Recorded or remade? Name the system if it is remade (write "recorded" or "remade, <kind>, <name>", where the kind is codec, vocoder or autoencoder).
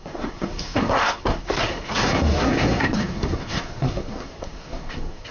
remade, codec, SNAC